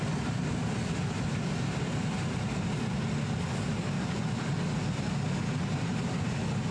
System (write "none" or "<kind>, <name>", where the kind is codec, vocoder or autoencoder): none